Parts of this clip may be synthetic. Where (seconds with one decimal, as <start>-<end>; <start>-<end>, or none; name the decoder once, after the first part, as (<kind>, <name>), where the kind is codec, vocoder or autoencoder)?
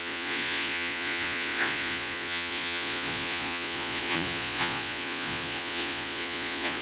0.0-6.8 (vocoder, Vocos)